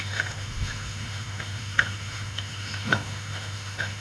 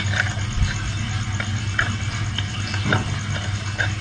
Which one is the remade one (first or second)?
first